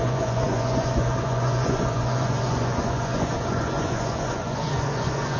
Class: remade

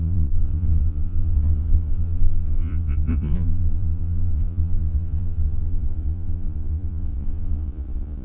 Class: remade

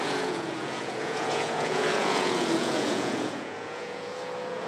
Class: remade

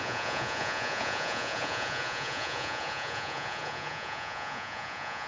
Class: remade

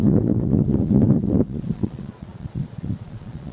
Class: remade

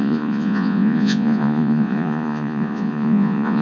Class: remade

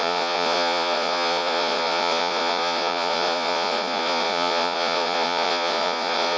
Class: remade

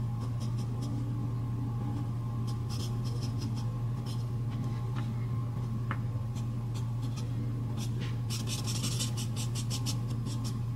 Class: recorded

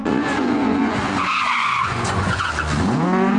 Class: remade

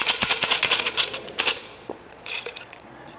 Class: remade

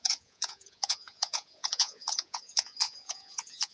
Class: remade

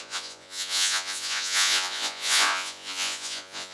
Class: remade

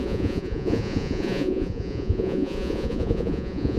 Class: remade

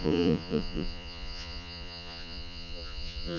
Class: remade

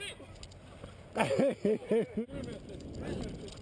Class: recorded